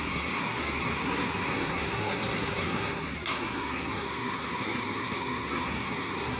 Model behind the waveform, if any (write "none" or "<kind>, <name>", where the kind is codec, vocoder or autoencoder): codec, SNAC